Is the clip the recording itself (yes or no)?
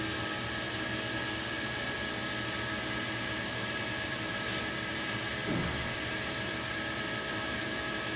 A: yes